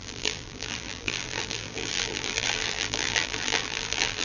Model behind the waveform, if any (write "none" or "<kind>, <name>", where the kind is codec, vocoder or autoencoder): vocoder, BigVGAN v2